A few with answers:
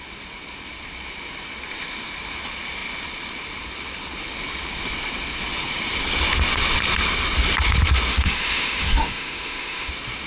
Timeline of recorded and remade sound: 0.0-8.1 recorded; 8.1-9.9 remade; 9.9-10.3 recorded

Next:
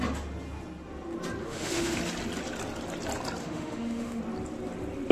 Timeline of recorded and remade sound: 0.0-1.4 recorded; 1.4-2.0 remade; 2.0-3.4 recorded; 3.4-4.2 remade; 4.2-5.1 recorded

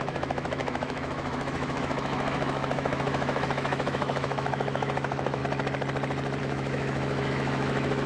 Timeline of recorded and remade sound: 0.0-5.4 remade; 5.4-6.4 recorded; 6.4-8.1 remade

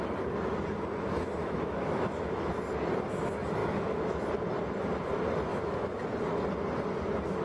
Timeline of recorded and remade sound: 0.0-1.4 recorded; 1.4-2.5 remade; 2.5-3.6 recorded; 3.6-4.3 remade; 4.3-5.5 recorded; 5.5-6.0 remade; 6.0-7.4 recorded

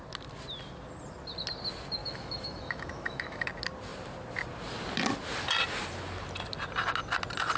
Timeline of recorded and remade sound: 0.0-2.0 recorded; 2.0-3.5 remade; 3.5-7.6 recorded